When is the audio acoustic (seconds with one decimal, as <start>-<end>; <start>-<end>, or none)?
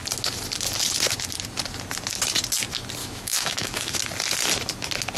0.0-3.0; 4.0-5.2